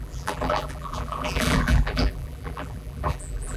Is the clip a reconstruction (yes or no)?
yes